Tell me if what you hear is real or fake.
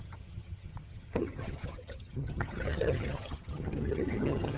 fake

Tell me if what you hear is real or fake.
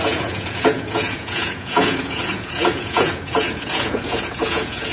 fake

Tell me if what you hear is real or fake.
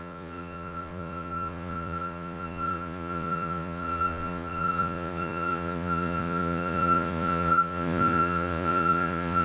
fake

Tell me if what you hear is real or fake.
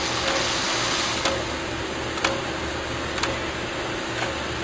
real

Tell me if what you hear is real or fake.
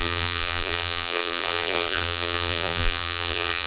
fake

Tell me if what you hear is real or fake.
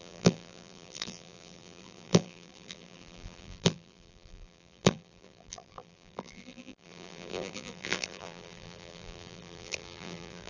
fake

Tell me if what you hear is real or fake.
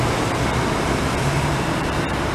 fake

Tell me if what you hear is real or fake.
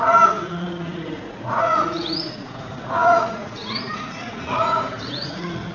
fake